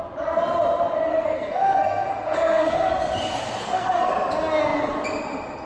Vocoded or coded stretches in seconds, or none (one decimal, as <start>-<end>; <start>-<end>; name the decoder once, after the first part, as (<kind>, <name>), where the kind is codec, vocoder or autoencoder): 1.1-2.9 (codec, SNAC); 3.6-4.1